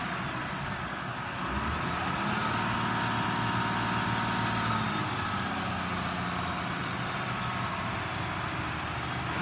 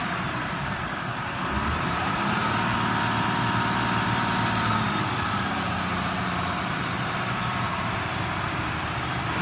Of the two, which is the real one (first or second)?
first